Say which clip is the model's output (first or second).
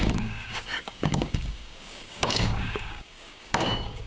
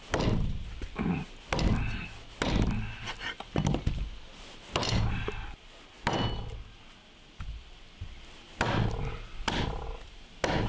first